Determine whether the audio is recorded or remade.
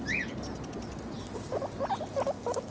recorded